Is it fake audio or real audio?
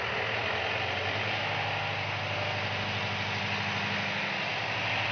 real